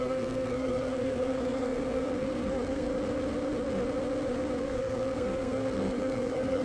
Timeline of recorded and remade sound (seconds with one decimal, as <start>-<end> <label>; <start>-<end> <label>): 0.0-2.9 remade; 2.9-4.6 recorded; 4.6-6.6 remade